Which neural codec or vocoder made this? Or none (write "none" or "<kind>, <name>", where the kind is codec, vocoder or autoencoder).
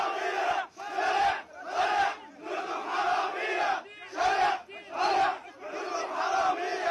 none